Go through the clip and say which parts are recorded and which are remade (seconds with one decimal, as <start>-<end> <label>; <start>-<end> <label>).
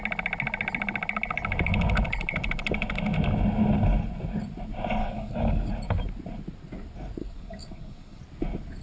0.0-5.0 recorded; 5.0-5.7 remade; 5.7-7.2 recorded; 7.2-8.2 remade; 8.2-8.8 recorded